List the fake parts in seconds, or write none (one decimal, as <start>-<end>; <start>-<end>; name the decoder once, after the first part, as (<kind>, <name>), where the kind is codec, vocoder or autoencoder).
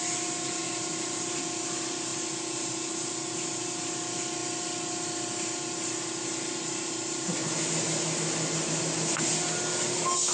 0.6-1.4 (vocoder, BigVGAN v2)